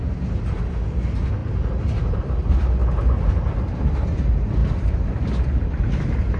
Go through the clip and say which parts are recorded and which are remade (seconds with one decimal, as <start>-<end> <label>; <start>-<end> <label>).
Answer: 0.0-4.6 recorded; 4.6-5.3 remade; 5.3-6.4 recorded